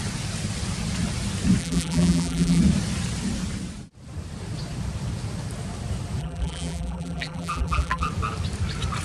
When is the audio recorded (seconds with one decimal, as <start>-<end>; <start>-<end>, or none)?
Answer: 0.0-1.6; 2.6-6.2; 8.1-9.0